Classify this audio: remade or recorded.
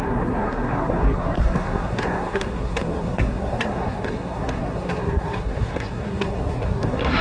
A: remade